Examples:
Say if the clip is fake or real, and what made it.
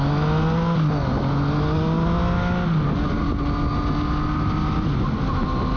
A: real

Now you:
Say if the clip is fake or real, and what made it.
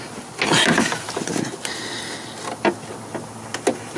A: real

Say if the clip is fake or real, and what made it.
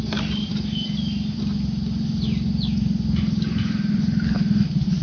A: real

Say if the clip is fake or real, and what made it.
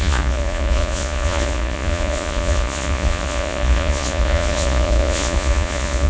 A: fake, vocoder, Vocos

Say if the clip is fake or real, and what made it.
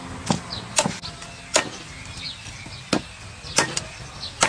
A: real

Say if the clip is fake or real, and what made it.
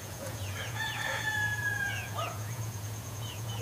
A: fake, vocoder, Vocos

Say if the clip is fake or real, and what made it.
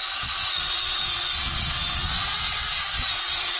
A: fake, vocoder, Vocos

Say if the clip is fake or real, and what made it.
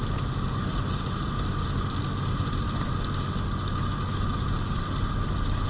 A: real